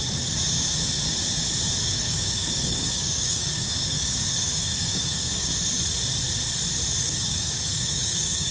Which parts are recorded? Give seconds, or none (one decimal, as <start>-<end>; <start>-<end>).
0.0-1.8; 5.5-7.0